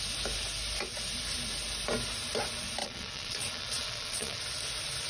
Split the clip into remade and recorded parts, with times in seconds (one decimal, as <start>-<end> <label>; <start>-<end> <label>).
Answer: 0.0-2.8 recorded; 2.8-4.4 remade; 4.4-5.1 recorded